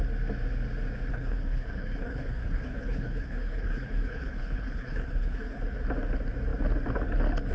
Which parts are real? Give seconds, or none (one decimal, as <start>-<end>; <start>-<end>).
0.0-1.1; 5.6-7.5